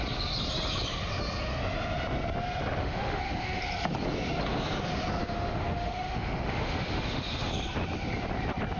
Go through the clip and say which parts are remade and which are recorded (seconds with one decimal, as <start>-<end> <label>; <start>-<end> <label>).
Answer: 0.0-2.8 recorded; 2.8-3.6 remade; 3.6-5.2 recorded; 5.2-7.5 remade; 7.5-8.8 recorded